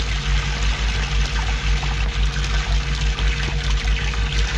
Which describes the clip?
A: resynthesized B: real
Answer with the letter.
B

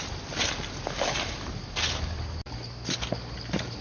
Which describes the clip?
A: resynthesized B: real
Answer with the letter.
B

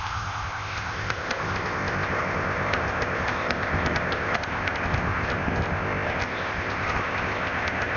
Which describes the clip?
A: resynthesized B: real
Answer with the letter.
A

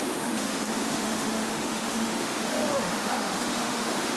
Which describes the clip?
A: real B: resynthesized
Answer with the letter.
B